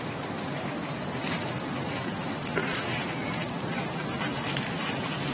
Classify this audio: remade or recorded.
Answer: remade